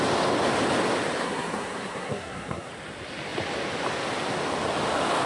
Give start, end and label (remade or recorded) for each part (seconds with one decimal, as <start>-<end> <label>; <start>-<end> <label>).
0.0-1.2 recorded; 1.2-2.7 remade; 2.7-5.3 recorded